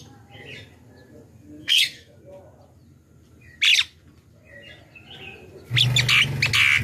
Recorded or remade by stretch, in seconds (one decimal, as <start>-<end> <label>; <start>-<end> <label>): 0.0-1.6 recorded; 1.6-2.2 remade; 2.2-6.8 recorded